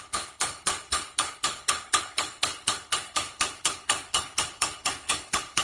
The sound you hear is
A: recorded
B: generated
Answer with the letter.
B